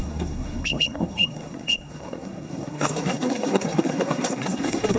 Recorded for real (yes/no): no